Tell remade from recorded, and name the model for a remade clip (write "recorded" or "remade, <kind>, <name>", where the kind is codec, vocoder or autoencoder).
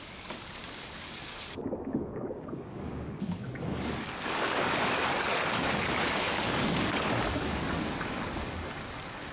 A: remade, codec, DAC